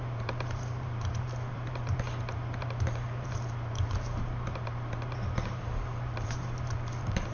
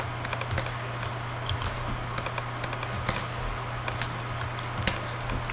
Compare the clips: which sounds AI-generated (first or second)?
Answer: first